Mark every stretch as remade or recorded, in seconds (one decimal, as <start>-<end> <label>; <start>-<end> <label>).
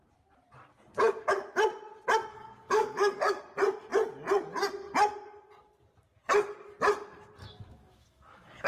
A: 0.0-2.3 recorded; 2.3-3.4 remade; 3.4-7.4 recorded; 7.4-8.7 remade